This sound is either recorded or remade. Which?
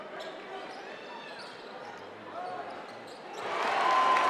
recorded